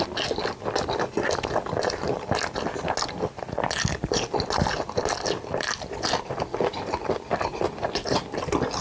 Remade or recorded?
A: recorded